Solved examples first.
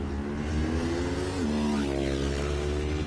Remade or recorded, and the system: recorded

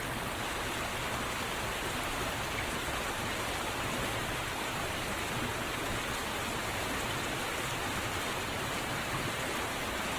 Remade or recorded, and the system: recorded